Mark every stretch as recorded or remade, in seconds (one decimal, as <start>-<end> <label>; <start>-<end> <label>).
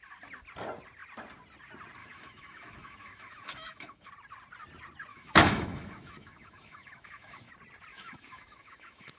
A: 0.0-2.0 recorded; 2.0-4.1 remade; 4.1-5.1 recorded; 5.1-7.5 remade; 7.5-7.9 recorded; 7.9-9.2 remade